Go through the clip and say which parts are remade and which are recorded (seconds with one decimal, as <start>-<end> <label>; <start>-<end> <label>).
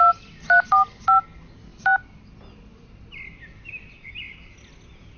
0.0-5.2 recorded